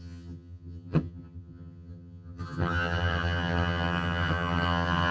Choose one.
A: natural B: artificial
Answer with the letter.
B